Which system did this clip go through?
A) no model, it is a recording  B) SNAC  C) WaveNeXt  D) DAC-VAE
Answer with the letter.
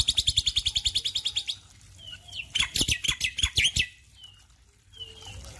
A